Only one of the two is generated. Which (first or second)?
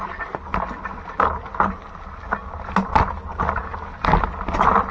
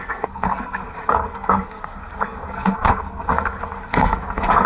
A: second